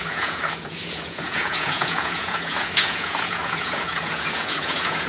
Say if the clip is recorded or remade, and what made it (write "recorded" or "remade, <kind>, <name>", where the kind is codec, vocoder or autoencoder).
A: remade, vocoder, Vocos